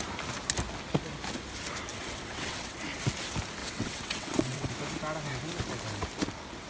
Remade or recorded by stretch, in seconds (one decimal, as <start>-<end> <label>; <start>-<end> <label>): 0.0-1.9 recorded; 1.9-2.8 remade; 2.8-3.6 recorded; 3.6-4.7 remade; 4.7-6.7 recorded